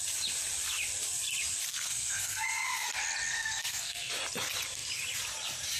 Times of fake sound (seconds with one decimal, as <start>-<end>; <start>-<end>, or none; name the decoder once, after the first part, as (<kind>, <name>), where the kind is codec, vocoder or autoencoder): 1.7-2.9 (codec, SNAC); 3.3-4.1